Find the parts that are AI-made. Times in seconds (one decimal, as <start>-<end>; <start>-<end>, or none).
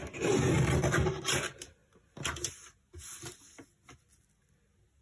0.0-0.5